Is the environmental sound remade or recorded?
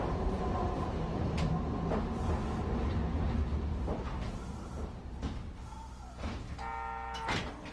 recorded